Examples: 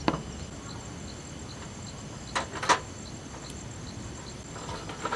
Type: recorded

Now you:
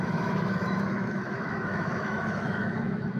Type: remade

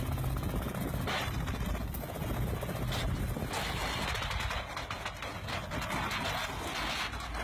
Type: recorded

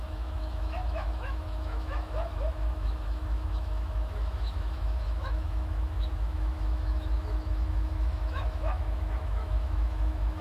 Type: remade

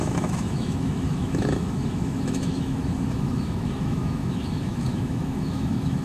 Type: remade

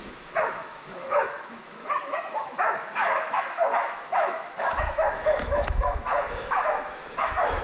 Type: remade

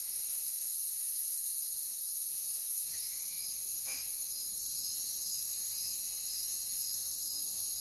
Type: remade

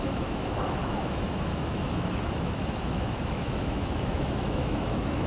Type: remade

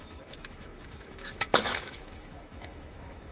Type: remade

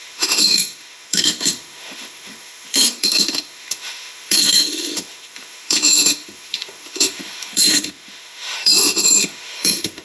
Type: remade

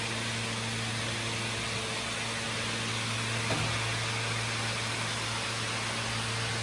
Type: recorded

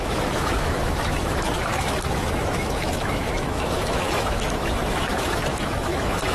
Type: remade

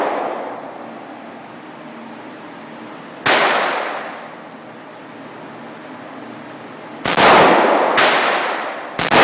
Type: recorded